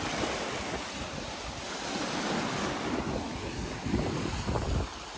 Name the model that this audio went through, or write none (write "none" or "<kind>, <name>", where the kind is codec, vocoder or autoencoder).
none